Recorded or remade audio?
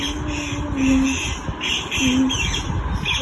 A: recorded